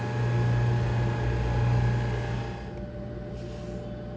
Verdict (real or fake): real